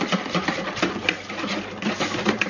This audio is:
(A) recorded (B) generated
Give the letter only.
A